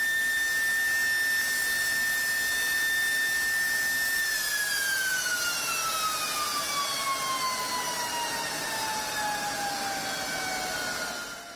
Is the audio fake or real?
real